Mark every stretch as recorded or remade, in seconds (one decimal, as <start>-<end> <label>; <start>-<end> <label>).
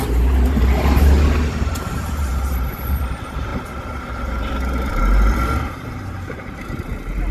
0.0-3.5 remade; 3.5-4.5 recorded; 4.5-7.3 remade